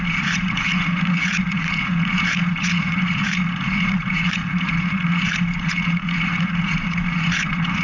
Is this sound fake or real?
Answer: fake